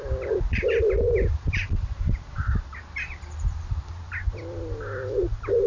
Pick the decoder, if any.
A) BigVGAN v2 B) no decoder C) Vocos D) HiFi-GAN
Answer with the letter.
A